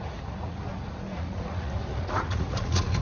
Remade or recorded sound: remade